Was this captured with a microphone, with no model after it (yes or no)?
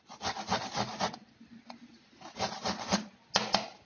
yes